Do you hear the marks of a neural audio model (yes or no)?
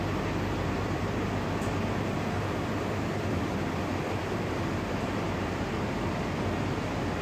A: no